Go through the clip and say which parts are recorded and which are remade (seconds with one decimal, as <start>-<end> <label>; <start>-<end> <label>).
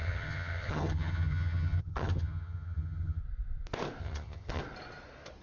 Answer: 0.0-3.2 remade; 3.2-4.0 recorded; 4.0-4.6 remade; 4.6-5.4 recorded